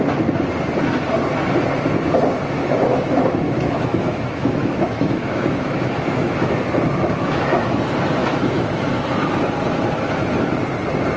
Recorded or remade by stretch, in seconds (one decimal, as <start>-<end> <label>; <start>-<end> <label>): 0.0-2.6 recorded; 2.6-7.7 remade; 7.7-8.2 recorded; 8.2-9.3 remade; 9.3-11.2 recorded